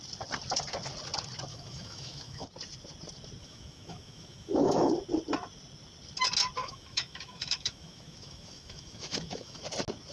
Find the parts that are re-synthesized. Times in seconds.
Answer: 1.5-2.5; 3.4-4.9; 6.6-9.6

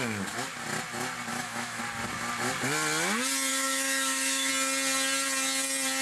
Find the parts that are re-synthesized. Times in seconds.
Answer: 1.3-1.8; 3.5-4.5

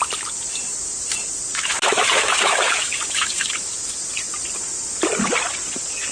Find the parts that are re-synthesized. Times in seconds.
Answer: 1.5-3.9

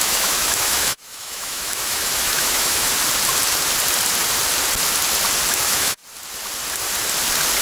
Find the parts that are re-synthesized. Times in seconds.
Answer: 0.0-2.9; 5.5-6.0

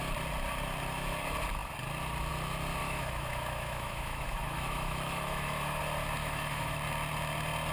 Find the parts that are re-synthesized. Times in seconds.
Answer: 2.8-5.8; 6.2-6.8

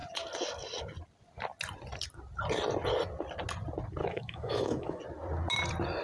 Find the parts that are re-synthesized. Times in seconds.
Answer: 4.0-5.0

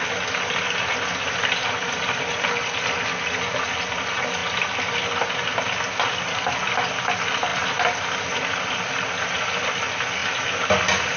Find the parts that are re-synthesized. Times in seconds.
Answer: none